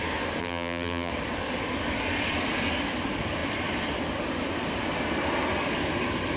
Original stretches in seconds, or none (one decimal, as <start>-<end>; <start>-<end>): 0.0-0.4; 1.1-6.4